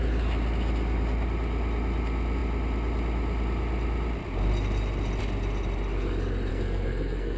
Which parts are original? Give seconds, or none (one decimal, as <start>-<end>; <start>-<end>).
0.0-6.5